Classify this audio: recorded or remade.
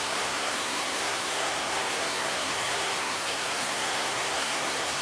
remade